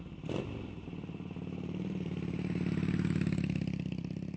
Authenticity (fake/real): fake